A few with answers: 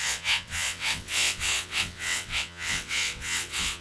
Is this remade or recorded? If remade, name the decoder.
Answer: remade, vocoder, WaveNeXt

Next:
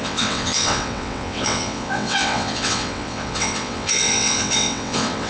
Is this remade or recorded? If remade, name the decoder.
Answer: remade, vocoder, WaveNeXt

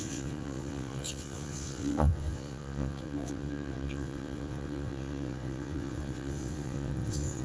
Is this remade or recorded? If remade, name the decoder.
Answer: remade, vocoder, WaveNeXt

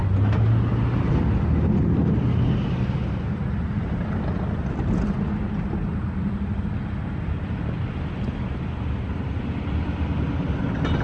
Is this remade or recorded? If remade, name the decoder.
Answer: recorded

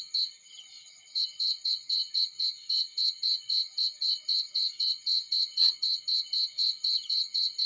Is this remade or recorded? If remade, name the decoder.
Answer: remade, vocoder, WaveNeXt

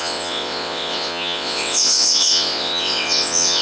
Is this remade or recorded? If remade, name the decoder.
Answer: remade, vocoder, WaveNeXt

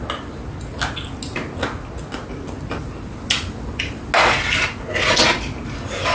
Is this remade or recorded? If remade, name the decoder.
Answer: recorded